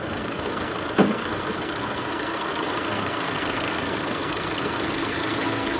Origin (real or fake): fake